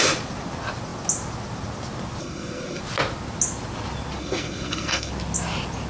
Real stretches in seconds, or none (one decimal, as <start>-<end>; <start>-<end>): 0.0-2.2; 2.8-4.2; 5.1-5.9